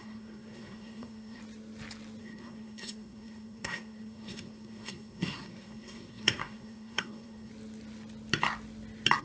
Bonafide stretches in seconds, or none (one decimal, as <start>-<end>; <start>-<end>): 1.4-2.2; 7.5-9.2